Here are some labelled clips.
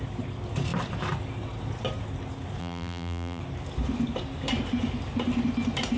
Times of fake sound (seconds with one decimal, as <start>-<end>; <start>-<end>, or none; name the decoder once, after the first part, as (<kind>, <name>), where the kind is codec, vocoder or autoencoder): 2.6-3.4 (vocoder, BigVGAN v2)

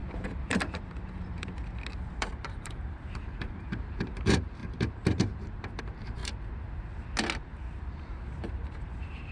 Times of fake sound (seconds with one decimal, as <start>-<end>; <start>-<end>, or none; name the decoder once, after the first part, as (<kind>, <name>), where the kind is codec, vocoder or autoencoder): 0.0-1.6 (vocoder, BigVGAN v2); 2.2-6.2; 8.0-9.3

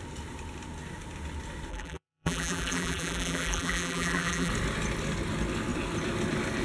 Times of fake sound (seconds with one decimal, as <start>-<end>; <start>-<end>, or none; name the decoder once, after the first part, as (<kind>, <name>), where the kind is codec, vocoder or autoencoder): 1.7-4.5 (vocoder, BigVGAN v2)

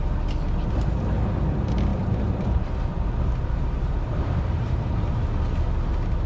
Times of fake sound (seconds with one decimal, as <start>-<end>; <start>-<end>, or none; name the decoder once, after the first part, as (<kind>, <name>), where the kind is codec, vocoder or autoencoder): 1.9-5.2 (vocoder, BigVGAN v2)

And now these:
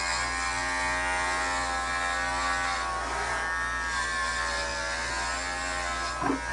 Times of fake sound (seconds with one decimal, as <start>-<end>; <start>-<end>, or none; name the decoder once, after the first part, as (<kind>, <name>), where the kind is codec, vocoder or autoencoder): none

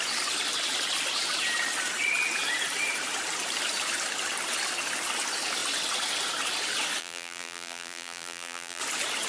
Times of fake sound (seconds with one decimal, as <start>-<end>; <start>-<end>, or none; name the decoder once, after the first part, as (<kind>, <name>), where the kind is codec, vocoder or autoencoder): 7.0-8.8 (vocoder, BigVGAN v2)

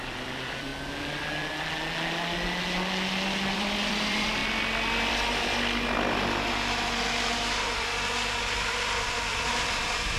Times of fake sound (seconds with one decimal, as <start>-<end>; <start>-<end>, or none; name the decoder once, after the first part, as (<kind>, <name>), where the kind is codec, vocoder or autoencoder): 0.0-0.7 (vocoder, BigVGAN v2); 3.5-4.4; 7.3-10.2